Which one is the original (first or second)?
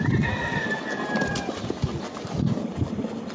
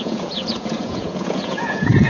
first